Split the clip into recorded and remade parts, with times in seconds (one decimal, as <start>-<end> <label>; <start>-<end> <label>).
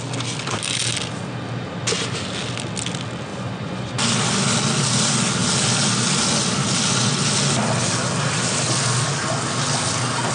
0.0-3.3 recorded; 3.3-3.9 remade; 3.9-10.3 recorded